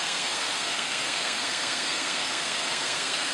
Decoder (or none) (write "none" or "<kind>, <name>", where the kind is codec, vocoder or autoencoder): codec, SNAC